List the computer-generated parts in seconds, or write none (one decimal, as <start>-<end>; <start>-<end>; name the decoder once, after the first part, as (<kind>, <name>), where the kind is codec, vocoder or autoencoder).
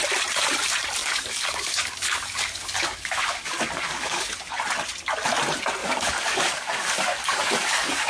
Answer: 1.0-4.6 (codec, DAC); 5.8-8.1